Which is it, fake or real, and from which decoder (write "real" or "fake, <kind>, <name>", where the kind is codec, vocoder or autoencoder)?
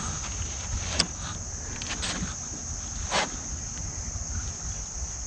real